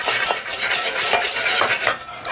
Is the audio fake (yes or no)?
no